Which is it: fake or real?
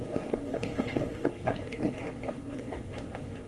fake